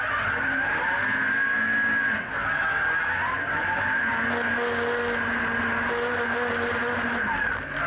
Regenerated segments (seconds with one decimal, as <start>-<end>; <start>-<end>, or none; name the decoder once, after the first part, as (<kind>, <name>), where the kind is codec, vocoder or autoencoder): none

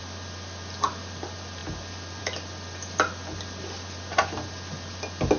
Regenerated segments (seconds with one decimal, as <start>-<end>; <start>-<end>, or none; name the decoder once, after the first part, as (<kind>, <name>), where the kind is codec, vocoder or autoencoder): none